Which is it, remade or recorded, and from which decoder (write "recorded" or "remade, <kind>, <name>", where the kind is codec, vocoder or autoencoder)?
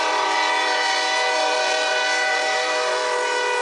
remade, vocoder, BigVGAN v2